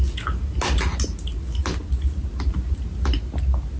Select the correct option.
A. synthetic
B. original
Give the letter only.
B